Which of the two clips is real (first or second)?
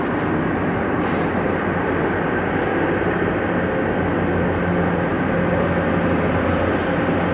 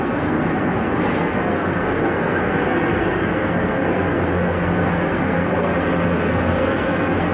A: first